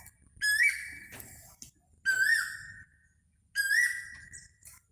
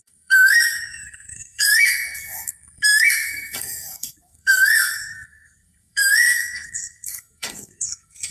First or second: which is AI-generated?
second